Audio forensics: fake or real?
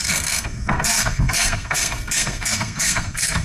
fake